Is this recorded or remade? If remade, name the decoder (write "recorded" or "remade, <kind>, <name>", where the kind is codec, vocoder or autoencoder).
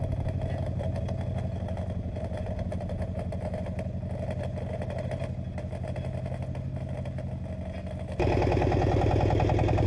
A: recorded